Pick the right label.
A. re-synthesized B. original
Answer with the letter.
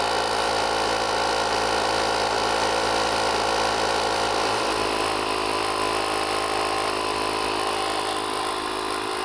B